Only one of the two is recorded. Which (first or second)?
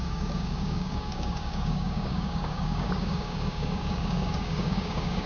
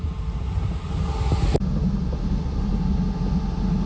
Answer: second